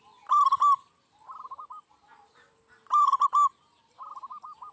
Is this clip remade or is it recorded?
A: recorded